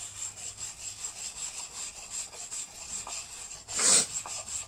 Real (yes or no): yes